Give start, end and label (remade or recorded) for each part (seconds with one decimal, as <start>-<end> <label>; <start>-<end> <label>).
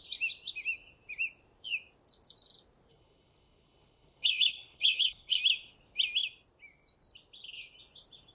0.0-2.9 recorded; 2.9-5.4 remade; 5.4-8.3 recorded